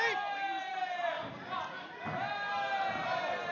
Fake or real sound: real